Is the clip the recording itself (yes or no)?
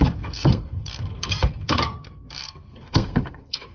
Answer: no